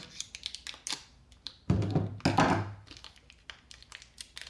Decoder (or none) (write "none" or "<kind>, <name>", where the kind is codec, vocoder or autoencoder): none